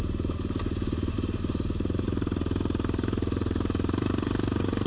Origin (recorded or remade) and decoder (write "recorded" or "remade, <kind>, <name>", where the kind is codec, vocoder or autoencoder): remade, vocoder, BigVGAN v2